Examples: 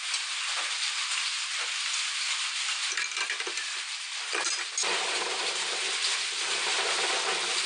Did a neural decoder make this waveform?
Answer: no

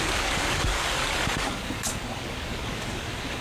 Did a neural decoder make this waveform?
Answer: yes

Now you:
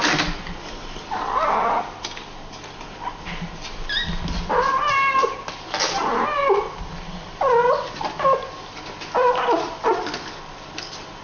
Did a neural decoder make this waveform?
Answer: no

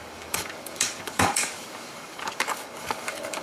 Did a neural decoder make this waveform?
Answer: yes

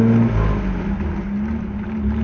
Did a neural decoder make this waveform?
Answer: no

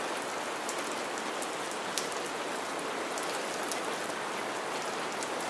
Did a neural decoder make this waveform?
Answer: no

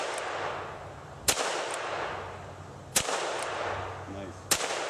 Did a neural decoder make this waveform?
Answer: no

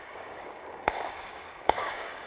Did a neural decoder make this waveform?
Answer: yes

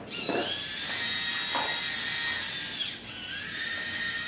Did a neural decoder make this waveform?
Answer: no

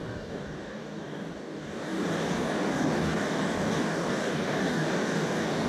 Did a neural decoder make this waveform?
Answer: yes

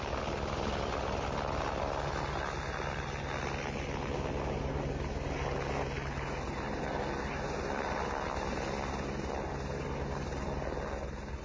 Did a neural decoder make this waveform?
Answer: no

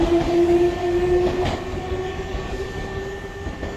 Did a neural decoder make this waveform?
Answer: yes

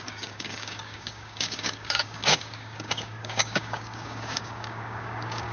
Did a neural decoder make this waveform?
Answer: yes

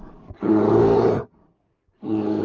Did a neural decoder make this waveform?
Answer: yes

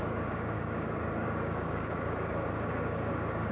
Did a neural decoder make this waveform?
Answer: yes